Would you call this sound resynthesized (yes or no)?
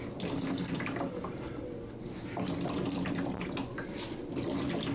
no